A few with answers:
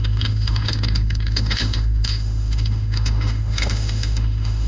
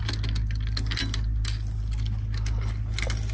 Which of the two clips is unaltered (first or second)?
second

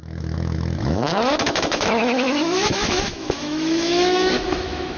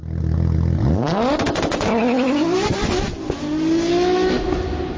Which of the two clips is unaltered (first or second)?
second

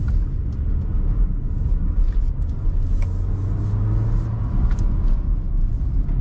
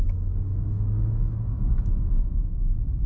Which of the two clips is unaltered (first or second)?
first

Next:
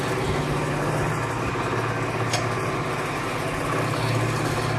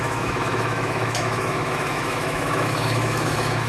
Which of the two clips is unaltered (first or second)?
first